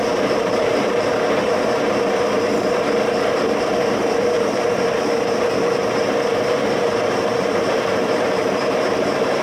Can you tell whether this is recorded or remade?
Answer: remade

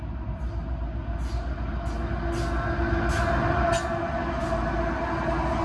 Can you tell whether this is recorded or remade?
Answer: recorded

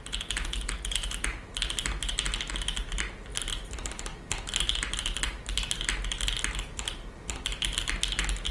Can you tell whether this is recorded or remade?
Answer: recorded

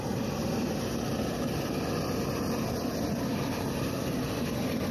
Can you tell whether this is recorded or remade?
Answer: recorded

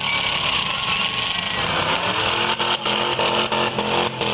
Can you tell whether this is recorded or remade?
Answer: recorded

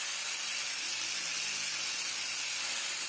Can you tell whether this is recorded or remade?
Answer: recorded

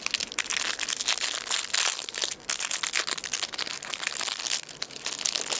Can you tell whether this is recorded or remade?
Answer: recorded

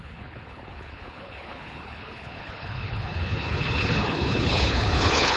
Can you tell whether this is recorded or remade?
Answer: remade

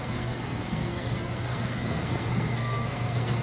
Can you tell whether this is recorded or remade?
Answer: remade